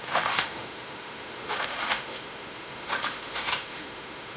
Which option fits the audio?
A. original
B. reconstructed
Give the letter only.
B